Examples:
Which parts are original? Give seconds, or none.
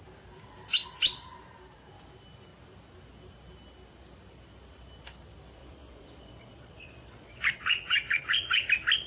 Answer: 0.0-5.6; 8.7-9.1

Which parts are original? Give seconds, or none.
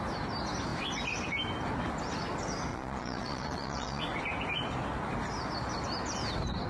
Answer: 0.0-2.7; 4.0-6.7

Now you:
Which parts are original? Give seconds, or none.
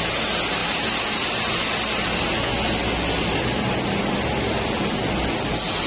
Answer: 0.0-5.9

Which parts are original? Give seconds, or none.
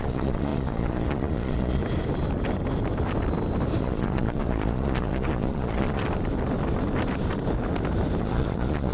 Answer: 1.8-3.8; 6.0-8.2